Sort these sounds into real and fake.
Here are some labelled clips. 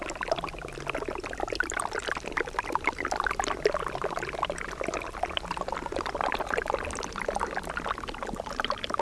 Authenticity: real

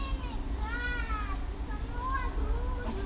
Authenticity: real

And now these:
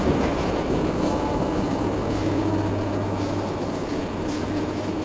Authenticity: fake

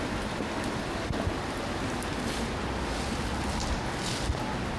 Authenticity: real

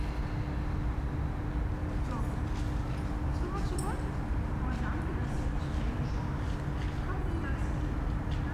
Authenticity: real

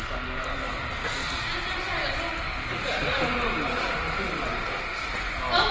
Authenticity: real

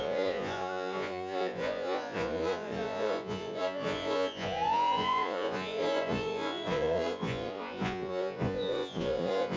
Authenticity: fake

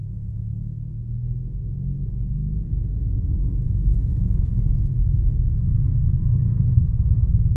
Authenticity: fake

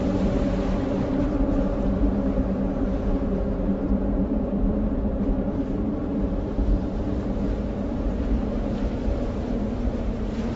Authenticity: fake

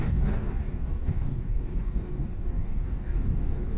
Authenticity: fake